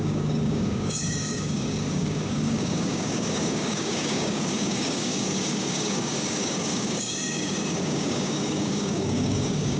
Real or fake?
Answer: fake